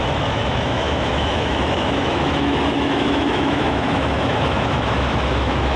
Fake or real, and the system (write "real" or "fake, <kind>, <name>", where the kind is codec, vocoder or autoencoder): fake, autoencoder, DAC-VAE